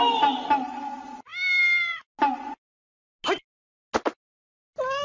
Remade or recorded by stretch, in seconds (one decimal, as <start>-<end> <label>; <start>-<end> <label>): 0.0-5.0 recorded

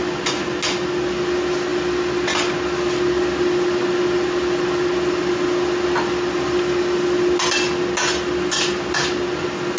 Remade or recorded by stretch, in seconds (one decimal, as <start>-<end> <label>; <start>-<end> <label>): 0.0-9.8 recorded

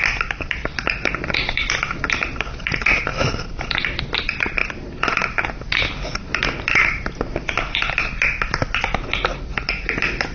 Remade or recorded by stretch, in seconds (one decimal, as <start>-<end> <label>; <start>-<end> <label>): 0.0-10.3 recorded

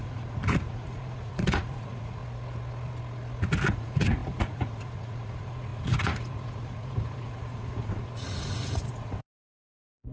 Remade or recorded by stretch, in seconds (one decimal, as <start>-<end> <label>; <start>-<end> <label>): 0.0-2.2 remade; 2.2-3.7 recorded; 3.7-10.1 remade

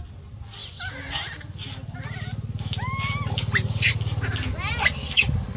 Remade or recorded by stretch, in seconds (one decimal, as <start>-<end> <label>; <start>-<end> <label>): 0.0-5.6 recorded

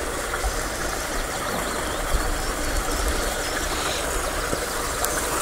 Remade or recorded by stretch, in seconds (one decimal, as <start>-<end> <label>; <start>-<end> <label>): 0.0-5.4 recorded

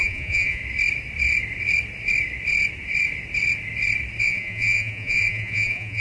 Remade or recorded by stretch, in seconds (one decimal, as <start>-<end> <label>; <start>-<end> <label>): 0.0-0.6 remade; 0.6-4.2 recorded; 4.2-6.0 remade

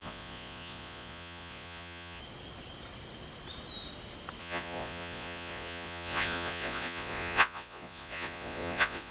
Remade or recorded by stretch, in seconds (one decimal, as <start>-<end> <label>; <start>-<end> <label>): 0.0-2.2 remade; 2.2-4.4 recorded; 4.4-9.1 remade